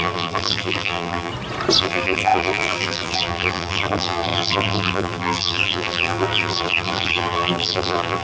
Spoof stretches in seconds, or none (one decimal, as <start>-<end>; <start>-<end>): 0.0-1.3; 1.8-8.2